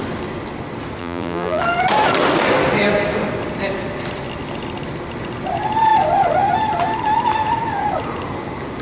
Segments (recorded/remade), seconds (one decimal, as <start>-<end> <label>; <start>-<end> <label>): 0.0-1.0 recorded; 1.0-1.6 remade; 1.6-8.8 recorded